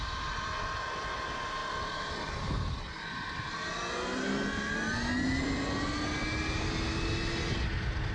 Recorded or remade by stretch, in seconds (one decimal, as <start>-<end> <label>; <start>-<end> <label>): 0.0-8.1 recorded